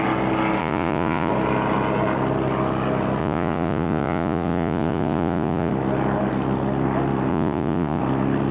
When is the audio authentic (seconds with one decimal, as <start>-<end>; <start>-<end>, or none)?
0.0-0.6; 1.3-3.2; 5.7-7.3; 8.0-8.5